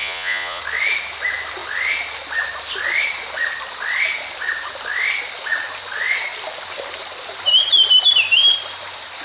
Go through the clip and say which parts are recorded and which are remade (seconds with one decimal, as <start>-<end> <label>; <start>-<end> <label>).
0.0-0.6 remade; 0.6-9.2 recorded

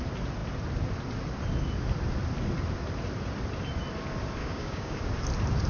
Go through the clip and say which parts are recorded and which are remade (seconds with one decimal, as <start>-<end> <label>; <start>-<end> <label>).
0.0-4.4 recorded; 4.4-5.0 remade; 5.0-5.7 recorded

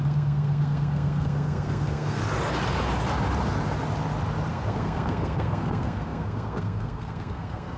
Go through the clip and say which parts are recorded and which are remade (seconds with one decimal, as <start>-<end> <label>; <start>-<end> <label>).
0.0-2.2 remade; 2.2-4.5 recorded; 4.5-7.8 remade

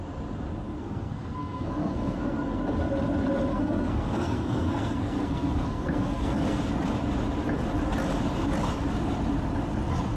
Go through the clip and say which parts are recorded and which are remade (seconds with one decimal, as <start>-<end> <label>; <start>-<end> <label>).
0.0-0.7 recorded; 0.7-2.6 remade; 2.6-3.5 recorded; 3.5-6.7 remade; 6.7-10.2 recorded

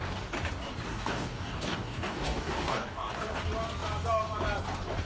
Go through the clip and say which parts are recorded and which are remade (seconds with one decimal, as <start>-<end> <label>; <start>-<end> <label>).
0.0-0.9 recorded; 0.9-3.3 remade; 3.3-5.1 recorded

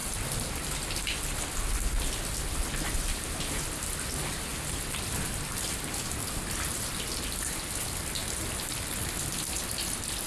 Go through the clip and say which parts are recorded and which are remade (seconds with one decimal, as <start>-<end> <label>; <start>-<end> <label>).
0.0-10.3 recorded